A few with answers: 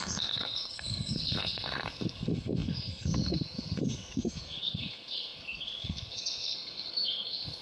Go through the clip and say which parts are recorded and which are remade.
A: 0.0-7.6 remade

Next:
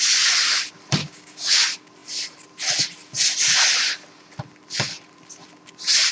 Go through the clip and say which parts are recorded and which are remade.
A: 0.0-1.0 recorded; 1.0-1.6 remade; 1.6-6.1 recorded

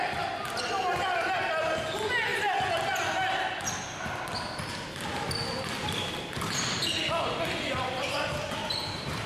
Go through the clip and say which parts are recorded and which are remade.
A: 0.0-8.6 recorded; 8.6-9.3 remade

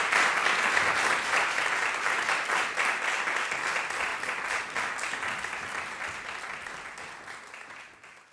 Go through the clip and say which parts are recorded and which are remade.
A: 0.0-8.3 recorded

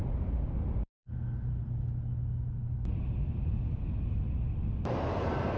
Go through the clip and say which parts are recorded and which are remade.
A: 0.0-5.6 recorded